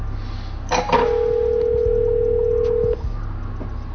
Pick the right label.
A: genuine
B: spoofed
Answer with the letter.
A